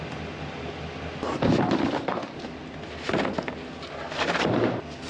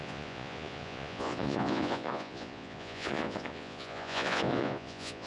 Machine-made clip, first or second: second